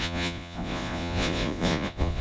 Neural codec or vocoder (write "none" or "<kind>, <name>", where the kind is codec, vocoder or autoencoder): vocoder, Vocos